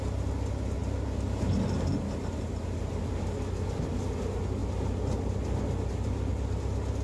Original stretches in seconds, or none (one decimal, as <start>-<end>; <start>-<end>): 0.0-7.0